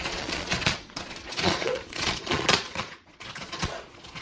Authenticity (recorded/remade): remade